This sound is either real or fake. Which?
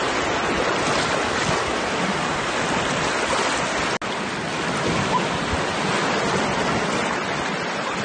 real